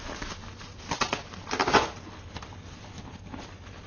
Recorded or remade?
recorded